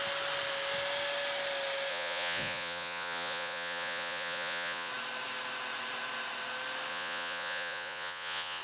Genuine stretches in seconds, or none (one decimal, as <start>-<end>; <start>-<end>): 0.0-1.9; 4.9-6.9